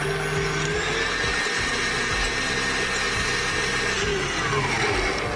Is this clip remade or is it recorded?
recorded